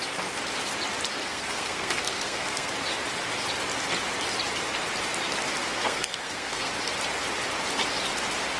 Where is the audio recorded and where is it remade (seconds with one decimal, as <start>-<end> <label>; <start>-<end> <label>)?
0.0-1.2 recorded; 1.2-2.7 remade; 2.7-5.6 recorded; 5.6-6.7 remade; 6.7-8.6 recorded